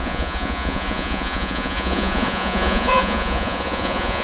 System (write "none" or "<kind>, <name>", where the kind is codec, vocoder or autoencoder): vocoder, Vocos